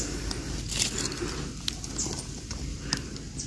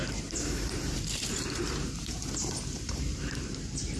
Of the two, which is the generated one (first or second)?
second